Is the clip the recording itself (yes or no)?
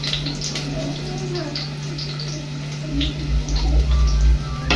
yes